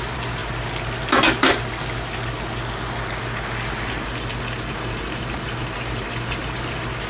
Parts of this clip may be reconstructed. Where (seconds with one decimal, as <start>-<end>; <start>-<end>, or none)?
0.0-0.4; 4.7-7.1